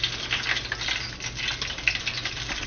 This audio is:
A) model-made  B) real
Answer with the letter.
B